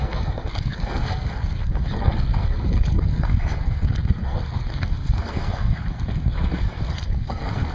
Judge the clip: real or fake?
fake